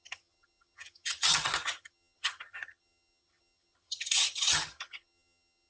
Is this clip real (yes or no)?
no